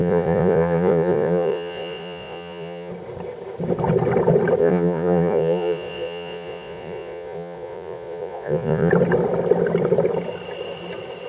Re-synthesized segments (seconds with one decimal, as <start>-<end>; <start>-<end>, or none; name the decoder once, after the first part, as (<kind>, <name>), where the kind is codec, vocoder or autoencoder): 0.0-2.9 (vocoder, Vocos); 4.6-8.9